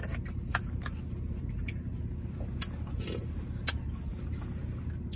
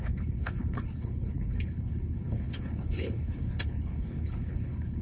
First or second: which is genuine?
first